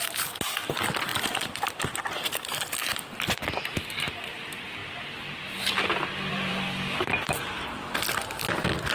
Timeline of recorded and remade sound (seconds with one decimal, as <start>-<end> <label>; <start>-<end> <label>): 0.0-4.8 remade; 4.8-6.3 recorded; 6.3-8.9 remade